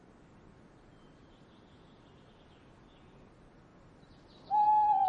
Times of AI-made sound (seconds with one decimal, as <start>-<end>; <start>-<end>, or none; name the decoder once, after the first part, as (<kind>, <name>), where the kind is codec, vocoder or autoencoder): none

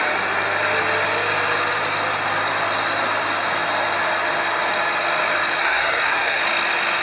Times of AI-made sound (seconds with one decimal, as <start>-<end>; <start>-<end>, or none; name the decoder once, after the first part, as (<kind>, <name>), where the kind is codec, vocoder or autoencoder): 5.6-6.4 (codec, SNAC)

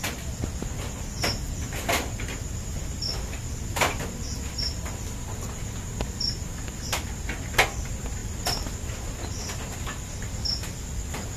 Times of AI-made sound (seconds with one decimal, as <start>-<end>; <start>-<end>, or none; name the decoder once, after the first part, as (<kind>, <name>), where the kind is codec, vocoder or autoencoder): none

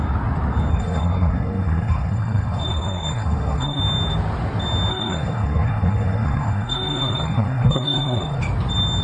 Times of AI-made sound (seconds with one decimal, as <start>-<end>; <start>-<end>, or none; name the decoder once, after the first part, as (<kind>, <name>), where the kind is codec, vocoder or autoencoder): 0.7-3.8 (codec, SNAC); 4.9-8.4

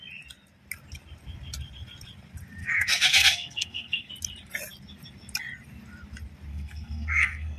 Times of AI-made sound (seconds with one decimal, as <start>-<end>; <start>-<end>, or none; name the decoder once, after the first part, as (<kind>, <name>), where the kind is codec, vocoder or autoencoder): 2.6-4.1 (codec, SNAC); 6.5-7.6

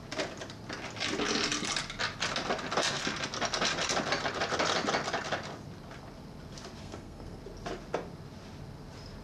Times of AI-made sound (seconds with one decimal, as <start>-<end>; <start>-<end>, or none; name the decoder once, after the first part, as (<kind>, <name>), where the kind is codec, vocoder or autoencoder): 6.8-7.4 (codec, SNAC)

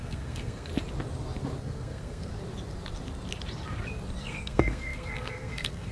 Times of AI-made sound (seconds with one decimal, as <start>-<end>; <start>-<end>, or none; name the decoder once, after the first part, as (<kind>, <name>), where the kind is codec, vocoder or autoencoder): 0.0-0.7 (codec, SNAC); 1.6-2.3; 4.2-5.9